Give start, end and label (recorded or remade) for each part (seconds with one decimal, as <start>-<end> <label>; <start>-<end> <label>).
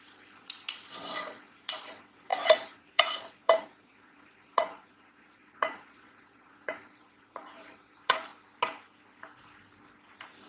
0.0-8.3 remade; 8.3-10.5 recorded